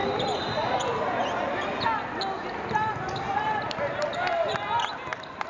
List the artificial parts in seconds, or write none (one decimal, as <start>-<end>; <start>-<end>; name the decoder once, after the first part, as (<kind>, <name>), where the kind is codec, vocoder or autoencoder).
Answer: none